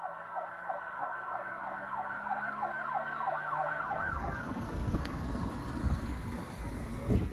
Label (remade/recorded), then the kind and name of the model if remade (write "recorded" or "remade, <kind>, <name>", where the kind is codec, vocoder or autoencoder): remade, codec, SNAC